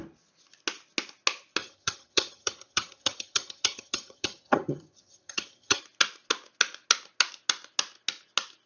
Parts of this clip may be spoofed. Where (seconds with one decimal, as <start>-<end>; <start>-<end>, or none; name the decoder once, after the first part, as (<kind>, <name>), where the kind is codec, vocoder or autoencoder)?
1.6-5.8 (vocoder, HiFi-GAN)